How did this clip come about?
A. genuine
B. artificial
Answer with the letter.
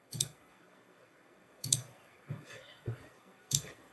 B